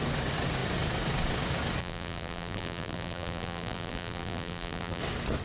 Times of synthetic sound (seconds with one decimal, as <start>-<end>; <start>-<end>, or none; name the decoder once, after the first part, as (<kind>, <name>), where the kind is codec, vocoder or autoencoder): 1.8-5.0 (vocoder, BigVGAN v2)